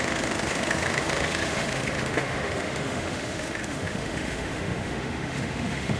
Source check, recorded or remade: remade